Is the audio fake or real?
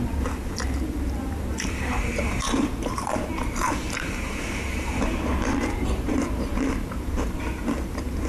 fake